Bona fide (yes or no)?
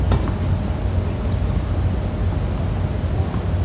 yes